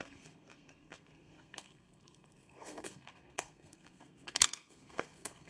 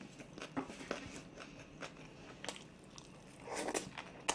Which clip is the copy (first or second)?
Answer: first